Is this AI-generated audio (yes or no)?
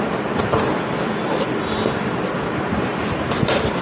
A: no